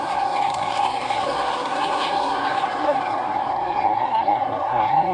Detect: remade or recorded remade